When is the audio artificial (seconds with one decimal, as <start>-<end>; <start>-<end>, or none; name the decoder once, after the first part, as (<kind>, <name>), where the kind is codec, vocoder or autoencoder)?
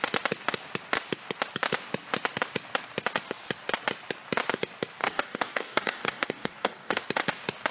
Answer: 5.0-7.0 (codec, DAC)